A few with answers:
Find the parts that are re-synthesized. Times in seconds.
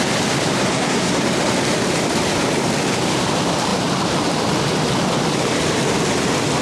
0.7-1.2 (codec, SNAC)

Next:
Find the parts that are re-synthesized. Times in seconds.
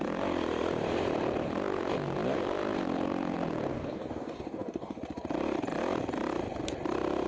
3.7-5.0 (codec, DAC)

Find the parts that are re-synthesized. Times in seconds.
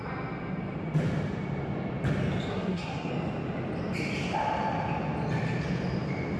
2.5-3.1 (codec, SNAC)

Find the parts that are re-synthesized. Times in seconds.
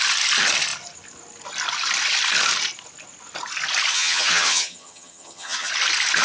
3.9-5.7 (vocoder, HiFi-GAN)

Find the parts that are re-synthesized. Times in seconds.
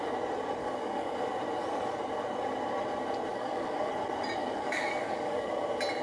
0.6-1.1 (codec, DAC); 3.3-3.9; 4.4-5.5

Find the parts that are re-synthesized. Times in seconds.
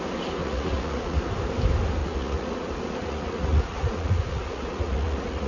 0.4-1.2 (vocoder, Vocos); 2.0-5.5